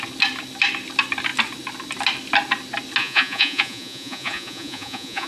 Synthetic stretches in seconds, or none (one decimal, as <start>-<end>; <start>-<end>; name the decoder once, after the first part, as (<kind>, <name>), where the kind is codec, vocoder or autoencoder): 3.0-5.3 (vocoder, Vocos)